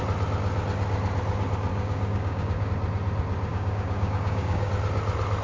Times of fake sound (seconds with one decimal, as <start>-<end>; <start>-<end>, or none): 1.7-2.7; 3.5-4.7